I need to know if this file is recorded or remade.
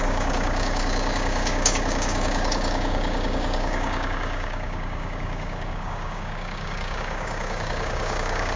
remade